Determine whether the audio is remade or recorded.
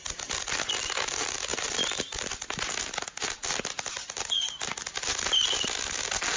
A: recorded